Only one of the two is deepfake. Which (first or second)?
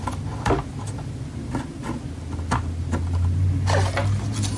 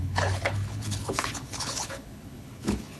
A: second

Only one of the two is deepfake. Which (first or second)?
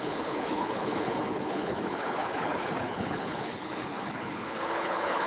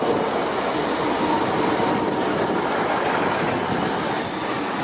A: first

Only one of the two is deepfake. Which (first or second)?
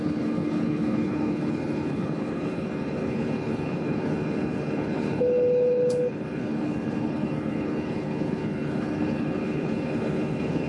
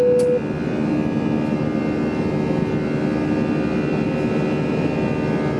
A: first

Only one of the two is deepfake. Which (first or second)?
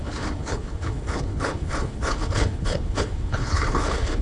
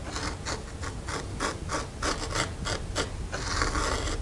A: first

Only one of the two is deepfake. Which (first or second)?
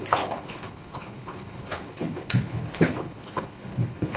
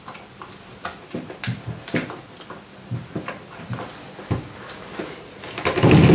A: first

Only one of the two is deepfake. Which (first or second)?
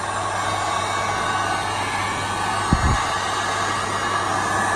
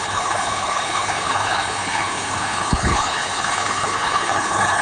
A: second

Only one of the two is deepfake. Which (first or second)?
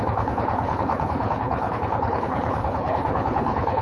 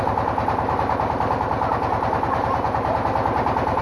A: first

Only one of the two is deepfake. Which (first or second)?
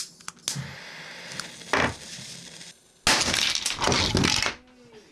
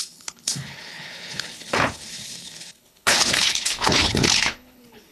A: second